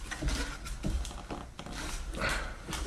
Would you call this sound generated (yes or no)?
no